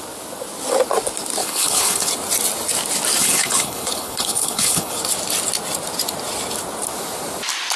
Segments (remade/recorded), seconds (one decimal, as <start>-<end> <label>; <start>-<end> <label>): 0.0-1.4 recorded; 1.4-2.1 remade; 2.1-3.2 recorded; 3.2-5.0 remade; 5.0-7.8 recorded